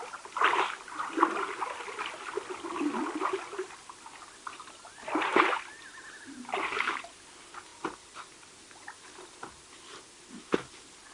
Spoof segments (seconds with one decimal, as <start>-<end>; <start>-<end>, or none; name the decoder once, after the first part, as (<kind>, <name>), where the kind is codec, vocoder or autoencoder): none